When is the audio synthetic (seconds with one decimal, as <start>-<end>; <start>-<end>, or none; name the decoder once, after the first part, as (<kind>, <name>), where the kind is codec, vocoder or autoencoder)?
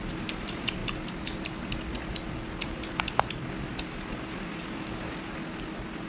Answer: none